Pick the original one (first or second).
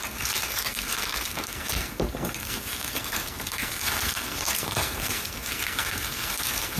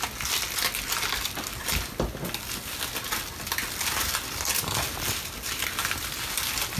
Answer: second